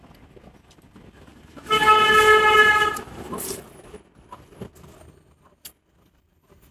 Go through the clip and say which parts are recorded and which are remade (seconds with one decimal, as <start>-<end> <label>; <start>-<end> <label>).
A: 0.0-1.3 recorded; 1.3-3.6 remade; 3.6-6.7 recorded